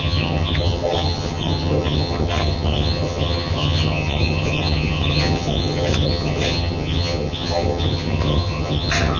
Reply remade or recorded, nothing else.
remade